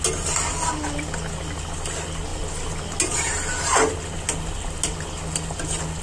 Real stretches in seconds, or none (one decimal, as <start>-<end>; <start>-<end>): 0.0-6.0